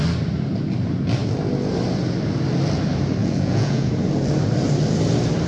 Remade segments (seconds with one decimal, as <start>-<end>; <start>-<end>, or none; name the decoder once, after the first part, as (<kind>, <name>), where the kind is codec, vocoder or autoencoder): 3.2-3.9 (vocoder, Vocos)